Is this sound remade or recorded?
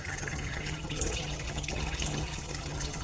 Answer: remade